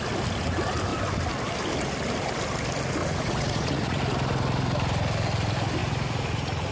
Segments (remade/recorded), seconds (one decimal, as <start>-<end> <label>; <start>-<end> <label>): 0.0-3.0 recorded; 3.0-4.0 remade; 4.0-5.8 recorded; 5.8-6.7 remade